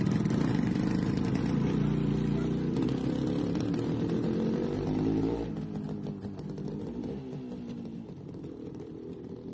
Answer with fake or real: real